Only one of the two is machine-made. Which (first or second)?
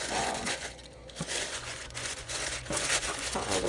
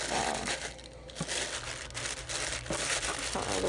first